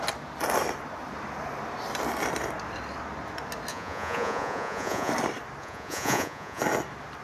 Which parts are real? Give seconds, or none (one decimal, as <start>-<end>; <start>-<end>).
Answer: 0.0-3.7; 5.1-5.6; 6.6-7.2